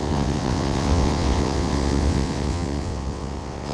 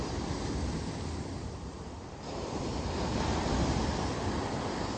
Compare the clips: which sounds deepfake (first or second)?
first